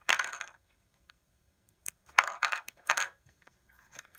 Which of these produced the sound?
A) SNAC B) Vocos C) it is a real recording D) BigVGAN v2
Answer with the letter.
A